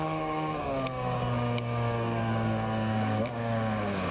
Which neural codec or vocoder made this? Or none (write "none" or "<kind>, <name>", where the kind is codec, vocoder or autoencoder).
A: codec, DAC